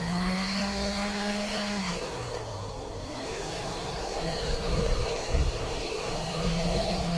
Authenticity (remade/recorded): remade